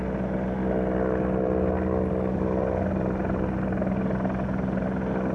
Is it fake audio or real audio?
real